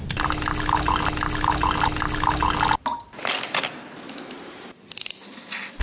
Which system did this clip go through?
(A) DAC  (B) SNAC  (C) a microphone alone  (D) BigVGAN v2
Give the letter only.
C